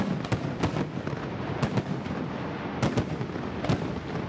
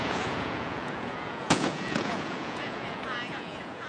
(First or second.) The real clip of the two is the first